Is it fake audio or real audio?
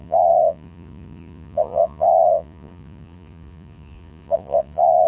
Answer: fake